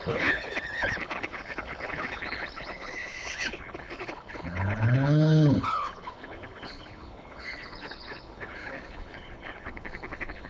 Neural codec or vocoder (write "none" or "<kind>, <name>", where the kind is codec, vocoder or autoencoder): codec, HILCodec